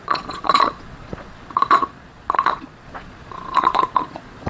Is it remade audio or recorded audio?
remade